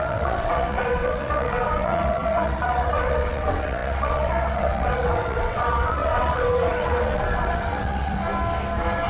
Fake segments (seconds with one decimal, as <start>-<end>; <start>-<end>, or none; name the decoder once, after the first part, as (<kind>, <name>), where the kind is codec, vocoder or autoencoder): 0.0-8.2 (vocoder, WaveNeXt)